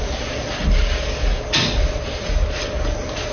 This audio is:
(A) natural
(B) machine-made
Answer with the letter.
A